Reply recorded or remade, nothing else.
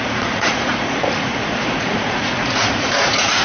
remade